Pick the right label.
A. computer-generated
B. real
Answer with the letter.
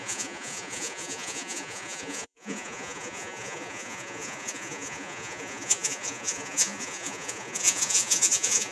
A